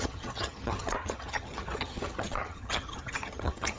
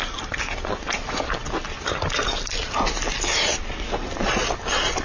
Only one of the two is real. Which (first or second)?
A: second